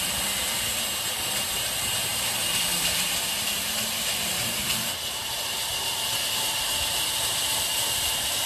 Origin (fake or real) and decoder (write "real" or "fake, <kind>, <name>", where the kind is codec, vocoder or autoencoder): fake, vocoder, BigVGAN v2